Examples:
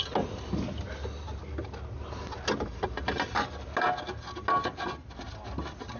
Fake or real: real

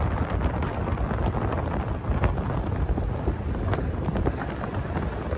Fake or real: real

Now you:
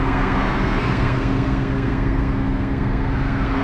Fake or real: fake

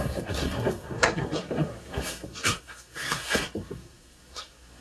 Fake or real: fake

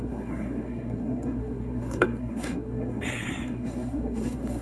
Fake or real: fake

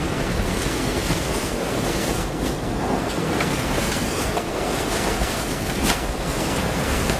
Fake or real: fake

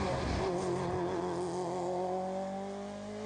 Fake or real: real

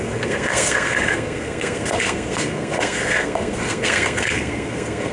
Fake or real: fake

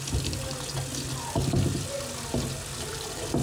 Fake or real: real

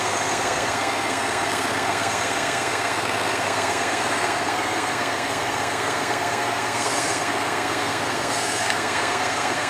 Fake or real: fake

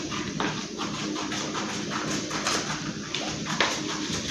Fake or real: real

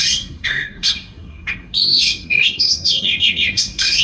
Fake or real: fake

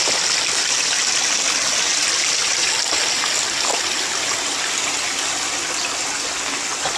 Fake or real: real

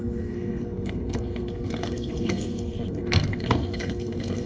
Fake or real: fake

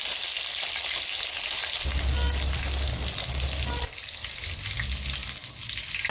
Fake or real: real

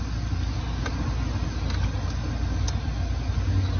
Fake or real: real